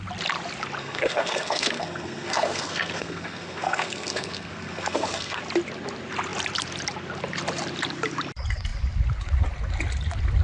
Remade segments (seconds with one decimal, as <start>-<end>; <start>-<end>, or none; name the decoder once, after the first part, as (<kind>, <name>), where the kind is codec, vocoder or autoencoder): 0.8-5.4 (codec, SNAC)